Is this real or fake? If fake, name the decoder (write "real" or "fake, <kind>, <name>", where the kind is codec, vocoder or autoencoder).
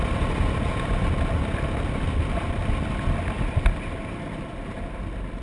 real